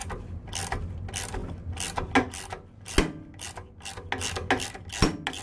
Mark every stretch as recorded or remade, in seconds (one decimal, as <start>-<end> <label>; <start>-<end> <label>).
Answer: 0.0-5.4 recorded